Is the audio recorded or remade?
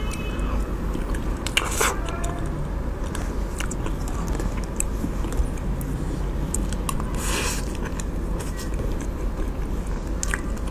recorded